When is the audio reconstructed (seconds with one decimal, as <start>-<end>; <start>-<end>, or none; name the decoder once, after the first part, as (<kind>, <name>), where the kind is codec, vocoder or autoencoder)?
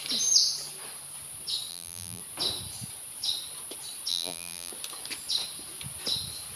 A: 1.7-2.2 (vocoder, BigVGAN v2); 4.1-4.7